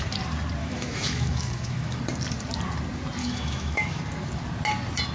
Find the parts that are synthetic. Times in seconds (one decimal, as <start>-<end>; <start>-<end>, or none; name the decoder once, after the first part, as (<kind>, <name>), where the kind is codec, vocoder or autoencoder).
0.6-2.0 (autoencoder, DAC-VAE); 3.2-4.0